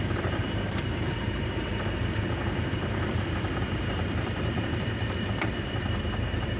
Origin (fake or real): fake